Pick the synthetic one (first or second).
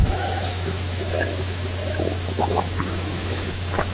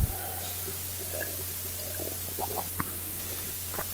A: first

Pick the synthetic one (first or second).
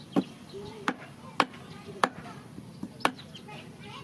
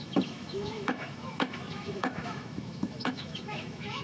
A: second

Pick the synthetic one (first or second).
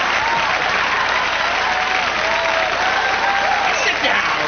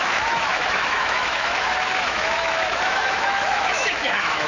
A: second